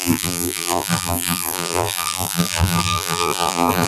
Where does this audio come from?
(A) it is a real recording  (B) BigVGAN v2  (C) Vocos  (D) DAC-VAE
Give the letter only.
B